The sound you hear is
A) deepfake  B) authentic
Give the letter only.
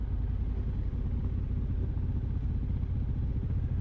B